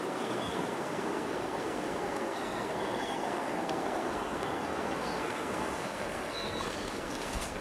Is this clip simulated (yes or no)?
yes